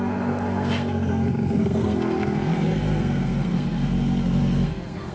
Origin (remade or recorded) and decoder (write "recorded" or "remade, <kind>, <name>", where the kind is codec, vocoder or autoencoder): remade, codec, SNAC